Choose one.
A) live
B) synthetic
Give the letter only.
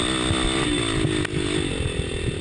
A